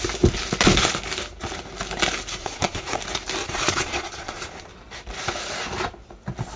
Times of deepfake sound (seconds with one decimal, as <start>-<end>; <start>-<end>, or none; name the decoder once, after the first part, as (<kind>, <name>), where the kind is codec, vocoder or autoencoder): 2.4-3.0 (vocoder, Vocos); 3.4-4.7